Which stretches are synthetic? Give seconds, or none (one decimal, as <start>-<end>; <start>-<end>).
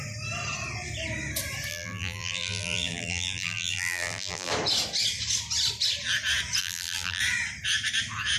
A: 1.7-4.5; 6.6-7.2